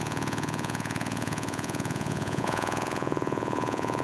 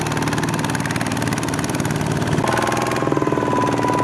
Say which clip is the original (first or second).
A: second